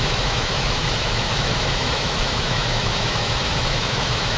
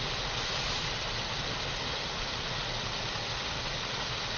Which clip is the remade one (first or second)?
first